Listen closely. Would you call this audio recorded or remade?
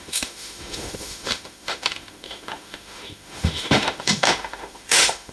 remade